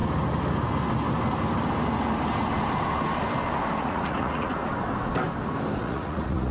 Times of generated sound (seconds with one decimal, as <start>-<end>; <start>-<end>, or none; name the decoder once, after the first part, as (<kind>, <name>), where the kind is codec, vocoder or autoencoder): 3.8-4.6 (vocoder, Vocos); 5.8-6.5